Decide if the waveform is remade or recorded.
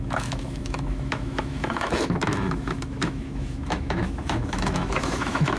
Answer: remade